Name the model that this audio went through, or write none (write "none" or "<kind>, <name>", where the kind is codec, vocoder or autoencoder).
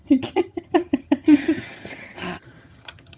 vocoder, HiFi-GAN